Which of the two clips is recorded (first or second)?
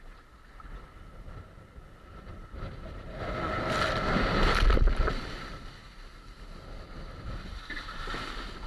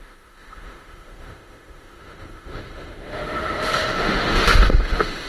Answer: first